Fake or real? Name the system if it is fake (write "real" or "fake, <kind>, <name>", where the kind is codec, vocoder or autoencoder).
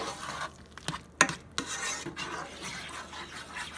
real